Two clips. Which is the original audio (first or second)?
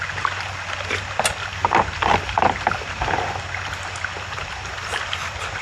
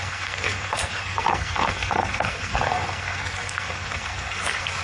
first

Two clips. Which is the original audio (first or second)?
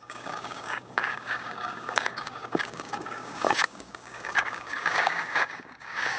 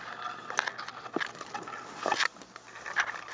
second